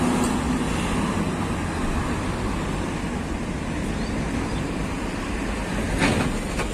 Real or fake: real